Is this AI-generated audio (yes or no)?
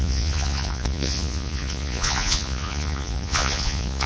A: yes